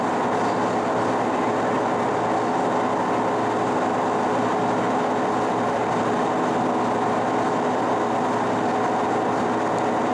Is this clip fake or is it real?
real